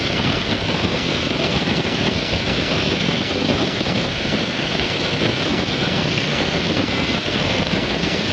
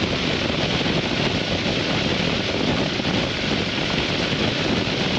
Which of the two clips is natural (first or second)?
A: second